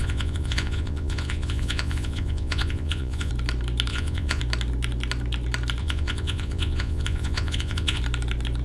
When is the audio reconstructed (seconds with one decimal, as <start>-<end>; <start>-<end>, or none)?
0.0-3.3; 3.9-4.4; 5.8-8.0